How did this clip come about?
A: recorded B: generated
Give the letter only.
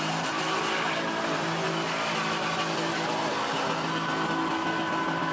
A